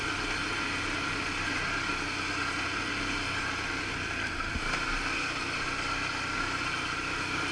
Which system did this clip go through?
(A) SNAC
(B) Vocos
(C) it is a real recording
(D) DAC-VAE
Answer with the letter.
C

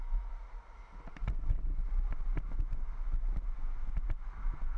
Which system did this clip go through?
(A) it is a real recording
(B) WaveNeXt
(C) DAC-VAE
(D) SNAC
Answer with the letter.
A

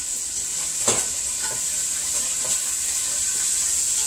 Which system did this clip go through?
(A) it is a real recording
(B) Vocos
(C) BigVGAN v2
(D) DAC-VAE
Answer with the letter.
A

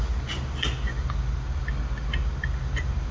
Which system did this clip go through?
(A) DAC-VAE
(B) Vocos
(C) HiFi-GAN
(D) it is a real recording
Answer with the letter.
D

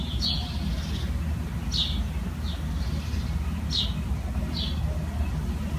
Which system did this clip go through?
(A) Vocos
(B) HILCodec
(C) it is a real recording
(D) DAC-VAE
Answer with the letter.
C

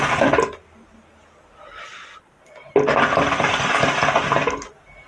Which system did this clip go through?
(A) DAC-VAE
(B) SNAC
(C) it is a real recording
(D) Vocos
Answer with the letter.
C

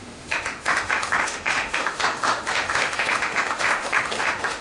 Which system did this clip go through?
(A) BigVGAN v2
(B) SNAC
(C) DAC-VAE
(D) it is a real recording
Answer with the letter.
C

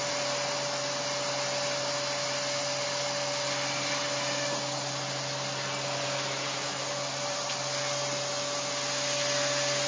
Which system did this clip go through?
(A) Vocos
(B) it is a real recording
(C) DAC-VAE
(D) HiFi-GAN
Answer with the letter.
B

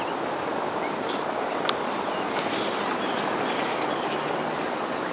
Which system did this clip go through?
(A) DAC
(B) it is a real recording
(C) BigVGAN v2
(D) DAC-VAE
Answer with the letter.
B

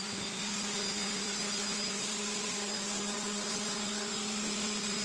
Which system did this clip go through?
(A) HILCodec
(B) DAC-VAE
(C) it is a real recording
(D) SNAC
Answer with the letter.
C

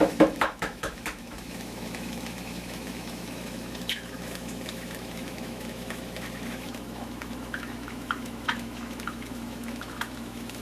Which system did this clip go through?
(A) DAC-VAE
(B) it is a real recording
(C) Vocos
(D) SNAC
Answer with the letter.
A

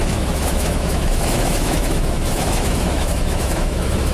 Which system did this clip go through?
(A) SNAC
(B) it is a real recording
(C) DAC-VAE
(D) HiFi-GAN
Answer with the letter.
C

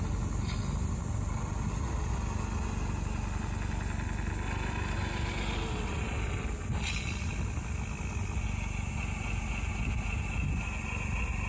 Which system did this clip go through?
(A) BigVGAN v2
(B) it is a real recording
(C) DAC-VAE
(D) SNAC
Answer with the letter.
B